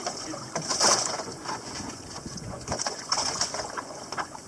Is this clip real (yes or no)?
no